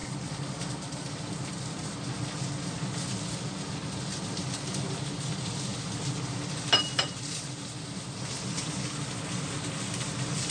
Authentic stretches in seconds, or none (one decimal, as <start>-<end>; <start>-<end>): 0.0-10.5